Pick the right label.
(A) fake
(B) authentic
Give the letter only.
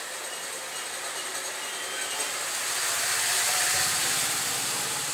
B